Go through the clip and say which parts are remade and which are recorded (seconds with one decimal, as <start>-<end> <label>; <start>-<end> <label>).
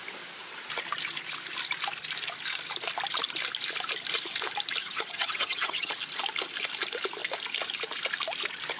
0.0-4.8 recorded; 4.8-5.9 remade; 5.9-8.8 recorded